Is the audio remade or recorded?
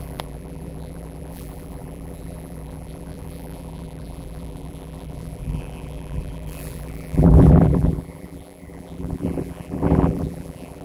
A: remade